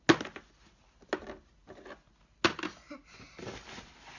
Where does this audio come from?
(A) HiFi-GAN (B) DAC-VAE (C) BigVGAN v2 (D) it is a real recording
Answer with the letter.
D